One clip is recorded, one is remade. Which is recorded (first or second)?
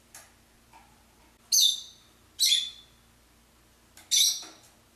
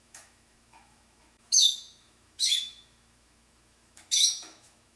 first